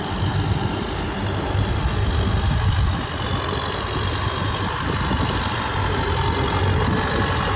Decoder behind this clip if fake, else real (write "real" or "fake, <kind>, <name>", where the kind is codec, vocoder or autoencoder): real